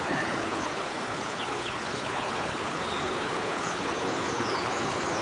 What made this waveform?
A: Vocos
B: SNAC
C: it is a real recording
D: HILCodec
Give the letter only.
D